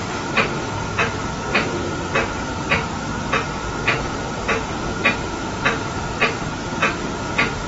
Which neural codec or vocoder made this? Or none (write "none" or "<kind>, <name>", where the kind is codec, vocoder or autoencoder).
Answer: none